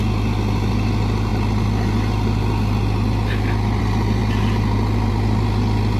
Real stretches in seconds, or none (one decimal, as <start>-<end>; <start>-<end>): 0.0-6.0